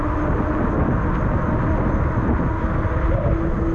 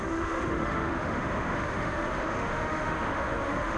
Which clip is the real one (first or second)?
first